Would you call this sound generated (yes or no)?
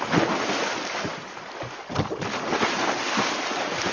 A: no